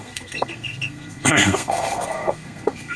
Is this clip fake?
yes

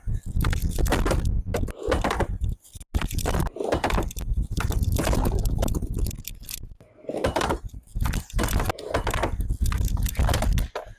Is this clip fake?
no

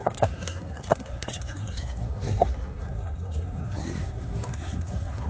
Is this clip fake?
yes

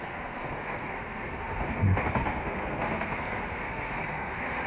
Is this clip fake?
yes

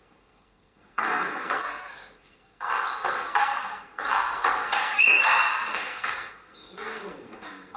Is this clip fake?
yes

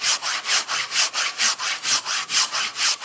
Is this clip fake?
no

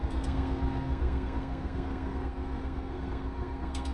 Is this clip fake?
yes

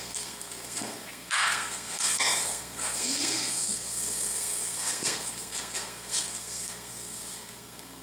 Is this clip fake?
yes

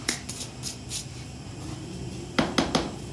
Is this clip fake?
no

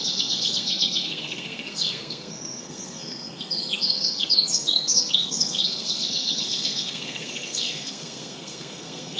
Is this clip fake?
yes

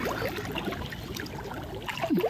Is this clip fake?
no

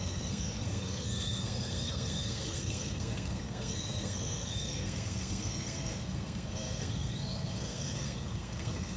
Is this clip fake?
yes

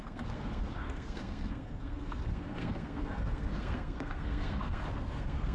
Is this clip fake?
yes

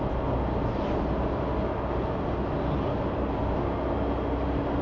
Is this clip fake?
no